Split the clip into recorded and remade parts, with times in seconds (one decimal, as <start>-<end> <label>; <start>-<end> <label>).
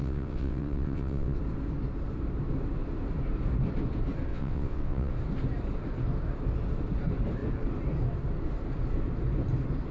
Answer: 0.0-1.4 remade; 1.4-4.3 recorded; 4.3-5.1 remade; 5.1-9.9 recorded